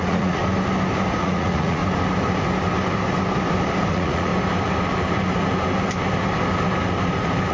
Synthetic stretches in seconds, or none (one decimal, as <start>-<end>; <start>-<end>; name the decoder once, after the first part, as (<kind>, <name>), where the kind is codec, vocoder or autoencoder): 0.0-0.4 (vocoder, Vocos); 1.2-1.8; 3.9-4.3